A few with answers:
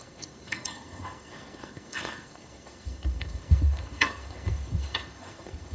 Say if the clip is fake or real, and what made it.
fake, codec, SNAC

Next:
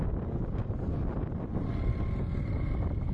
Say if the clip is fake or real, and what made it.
real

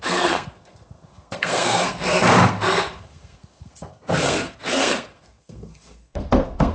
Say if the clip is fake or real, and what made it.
fake, codec, SNAC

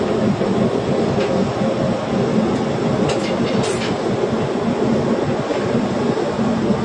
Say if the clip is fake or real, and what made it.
real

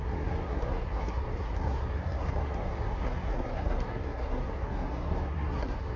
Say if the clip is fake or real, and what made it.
fake, codec, SNAC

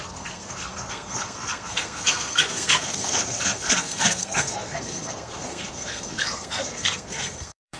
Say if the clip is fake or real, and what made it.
fake, codec, SNAC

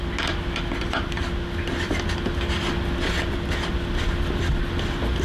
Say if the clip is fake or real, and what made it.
real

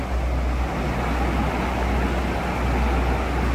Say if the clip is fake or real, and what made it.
real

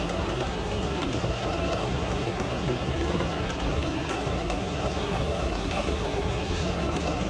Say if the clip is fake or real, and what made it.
fake, codec, SNAC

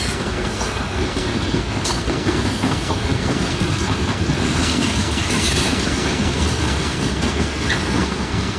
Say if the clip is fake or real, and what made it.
fake, codec, SNAC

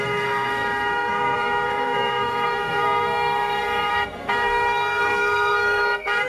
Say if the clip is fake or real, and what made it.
fake, codec, SNAC